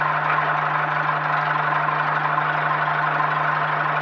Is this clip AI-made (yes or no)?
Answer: no